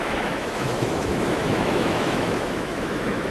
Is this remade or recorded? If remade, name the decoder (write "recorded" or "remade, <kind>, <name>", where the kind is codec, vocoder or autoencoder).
remade, autoencoder, DAC-VAE